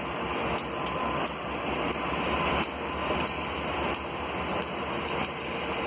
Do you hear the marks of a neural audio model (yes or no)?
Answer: no